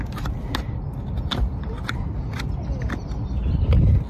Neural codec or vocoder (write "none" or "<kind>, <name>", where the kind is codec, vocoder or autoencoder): none